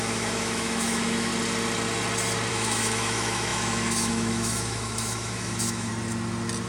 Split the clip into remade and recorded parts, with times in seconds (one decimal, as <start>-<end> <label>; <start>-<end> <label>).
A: 0.0-1.3 remade; 1.3-2.5 recorded; 2.5-5.9 remade; 5.9-6.7 recorded